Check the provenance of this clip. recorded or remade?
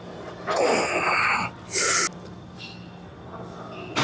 recorded